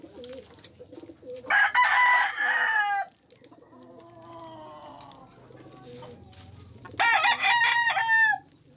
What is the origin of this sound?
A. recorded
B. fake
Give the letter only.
A